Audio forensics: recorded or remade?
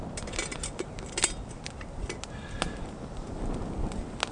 recorded